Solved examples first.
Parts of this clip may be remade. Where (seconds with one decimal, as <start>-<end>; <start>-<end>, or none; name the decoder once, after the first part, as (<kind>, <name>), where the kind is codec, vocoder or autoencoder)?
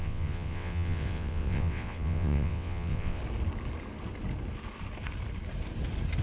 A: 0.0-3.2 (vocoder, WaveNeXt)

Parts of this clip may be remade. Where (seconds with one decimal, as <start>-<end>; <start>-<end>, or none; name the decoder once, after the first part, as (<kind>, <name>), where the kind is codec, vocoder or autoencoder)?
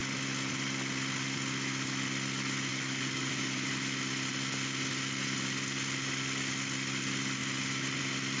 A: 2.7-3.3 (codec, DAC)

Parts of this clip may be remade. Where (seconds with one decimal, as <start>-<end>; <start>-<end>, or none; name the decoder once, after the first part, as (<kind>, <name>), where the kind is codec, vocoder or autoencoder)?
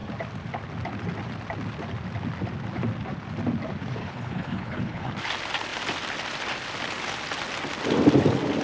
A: 4.0-5.1 (codec, HILCodec)